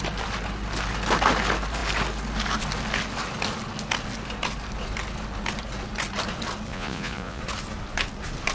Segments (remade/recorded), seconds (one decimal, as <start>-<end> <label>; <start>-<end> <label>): 0.0-6.7 recorded; 6.7-7.4 remade; 7.4-8.5 recorded